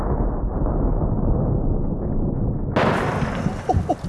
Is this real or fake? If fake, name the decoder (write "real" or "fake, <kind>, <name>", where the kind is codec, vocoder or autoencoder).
real